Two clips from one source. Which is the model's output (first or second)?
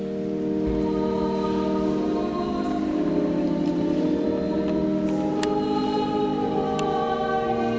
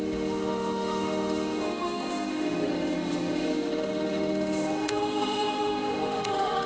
second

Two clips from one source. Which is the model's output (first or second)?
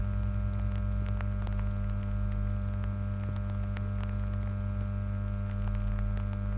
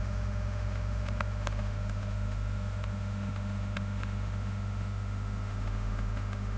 second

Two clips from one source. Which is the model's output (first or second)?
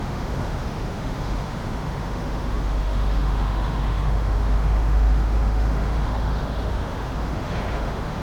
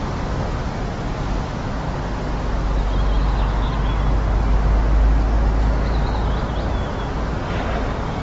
first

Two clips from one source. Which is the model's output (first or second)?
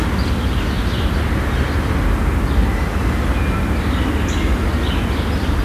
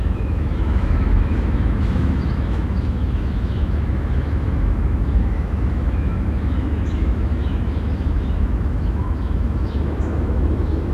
second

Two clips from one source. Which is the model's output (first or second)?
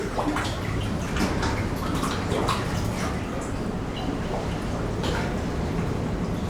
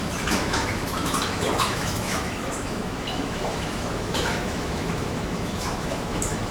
second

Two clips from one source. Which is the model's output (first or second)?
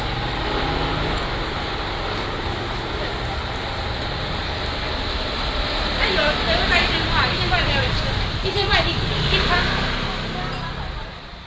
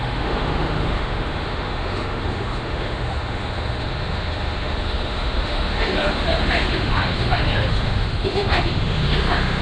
second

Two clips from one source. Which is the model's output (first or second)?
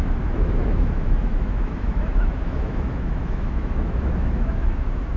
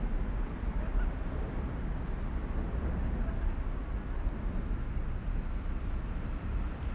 first